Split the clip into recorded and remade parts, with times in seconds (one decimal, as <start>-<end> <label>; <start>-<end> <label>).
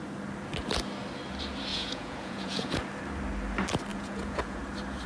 0.0-1.7 recorded; 1.7-2.7 remade; 2.7-3.9 recorded; 3.9-4.6 remade; 4.6-5.1 recorded